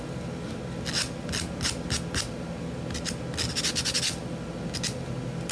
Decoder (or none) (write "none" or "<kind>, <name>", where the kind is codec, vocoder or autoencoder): none